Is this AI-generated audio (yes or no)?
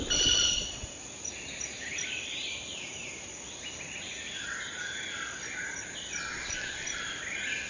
no